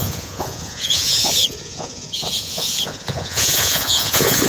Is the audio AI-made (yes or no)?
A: yes